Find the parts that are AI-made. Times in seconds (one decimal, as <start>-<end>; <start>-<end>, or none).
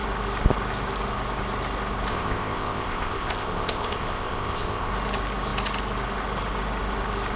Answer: 2.1-4.9